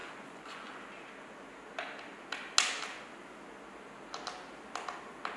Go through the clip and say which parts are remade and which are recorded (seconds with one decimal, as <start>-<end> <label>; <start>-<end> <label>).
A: 0.0-0.7 remade; 0.7-5.4 recorded

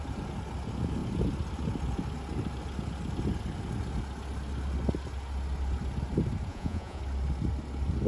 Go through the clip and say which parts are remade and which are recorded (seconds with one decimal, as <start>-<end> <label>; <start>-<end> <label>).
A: 0.0-6.5 recorded; 6.5-7.0 remade; 7.0-8.1 recorded

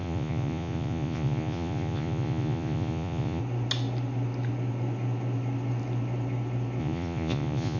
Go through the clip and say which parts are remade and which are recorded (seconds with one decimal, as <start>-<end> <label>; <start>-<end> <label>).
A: 0.0-3.4 remade; 3.4-6.8 recorded; 6.8-7.8 remade

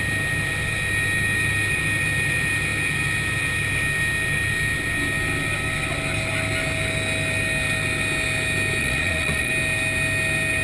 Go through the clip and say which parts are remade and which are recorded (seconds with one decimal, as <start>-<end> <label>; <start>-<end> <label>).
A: 0.0-8.8 recorded; 8.8-9.5 remade; 9.5-10.6 recorded

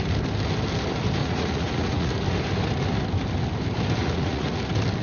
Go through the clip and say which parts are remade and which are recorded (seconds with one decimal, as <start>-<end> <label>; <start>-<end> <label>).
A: 0.0-1.2 recorded; 1.2-2.1 remade; 2.1-4.0 recorded; 4.0-4.5 remade; 4.5-5.0 recorded

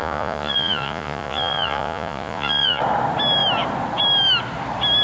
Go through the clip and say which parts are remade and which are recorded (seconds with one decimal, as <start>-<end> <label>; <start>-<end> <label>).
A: 0.0-2.8 remade; 2.8-5.0 recorded